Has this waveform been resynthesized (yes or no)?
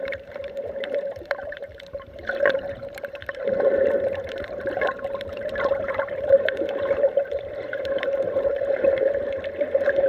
yes